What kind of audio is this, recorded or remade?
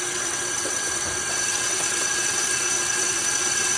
remade